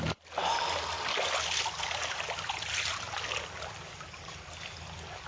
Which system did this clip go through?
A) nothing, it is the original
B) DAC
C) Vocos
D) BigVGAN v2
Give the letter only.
A